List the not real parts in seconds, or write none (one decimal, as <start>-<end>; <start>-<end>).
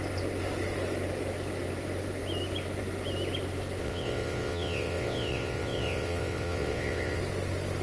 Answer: 3.8-7.2